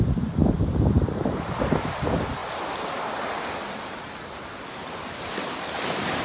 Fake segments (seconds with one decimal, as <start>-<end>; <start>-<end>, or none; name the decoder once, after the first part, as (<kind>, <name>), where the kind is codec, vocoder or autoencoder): none